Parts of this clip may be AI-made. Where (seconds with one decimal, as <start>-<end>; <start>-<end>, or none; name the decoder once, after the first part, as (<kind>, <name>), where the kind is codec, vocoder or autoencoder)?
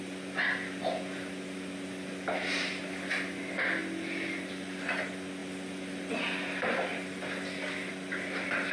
none